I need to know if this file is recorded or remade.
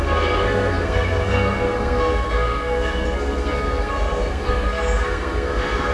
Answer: remade